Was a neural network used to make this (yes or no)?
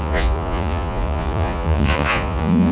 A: yes